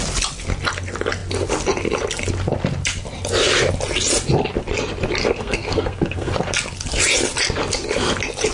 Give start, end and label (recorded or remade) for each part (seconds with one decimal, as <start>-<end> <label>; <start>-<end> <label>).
0.0-5.2 recorded; 5.2-6.3 remade; 6.3-8.5 recorded